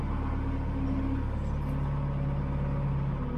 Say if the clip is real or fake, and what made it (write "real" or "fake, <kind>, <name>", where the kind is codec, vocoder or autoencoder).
real